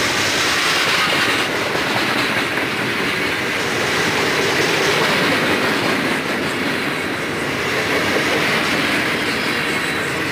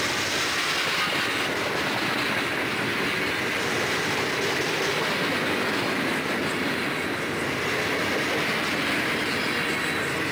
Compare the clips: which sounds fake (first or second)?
first